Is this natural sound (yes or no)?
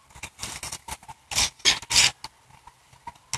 yes